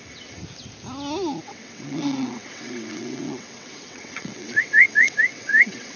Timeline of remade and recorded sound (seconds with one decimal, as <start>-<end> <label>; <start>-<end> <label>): 0.0-0.4 remade; 0.4-1.4 recorded; 1.4-6.0 remade